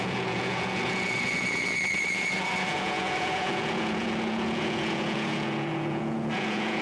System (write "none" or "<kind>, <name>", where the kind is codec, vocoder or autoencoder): vocoder, Vocos